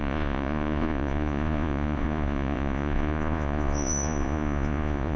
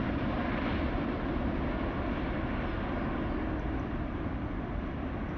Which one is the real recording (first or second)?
second